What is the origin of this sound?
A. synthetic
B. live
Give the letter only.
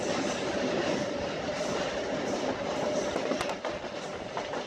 B